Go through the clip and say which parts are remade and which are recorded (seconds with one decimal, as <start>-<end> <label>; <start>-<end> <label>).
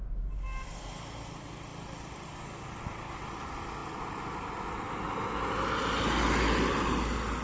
0.0-7.4 recorded